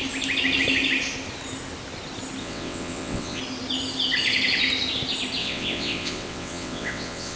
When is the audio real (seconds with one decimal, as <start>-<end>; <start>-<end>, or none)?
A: 0.0-2.4; 3.4-5.4